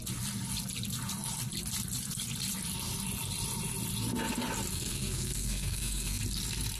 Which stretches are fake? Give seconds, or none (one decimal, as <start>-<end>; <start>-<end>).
4.7-6.2